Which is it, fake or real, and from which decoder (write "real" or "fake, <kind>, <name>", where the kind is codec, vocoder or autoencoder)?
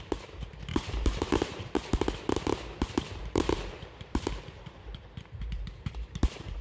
fake, vocoder, BigVGAN v2